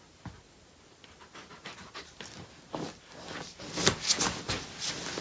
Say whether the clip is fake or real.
real